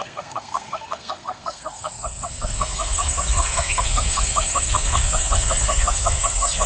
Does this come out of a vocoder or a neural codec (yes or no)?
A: yes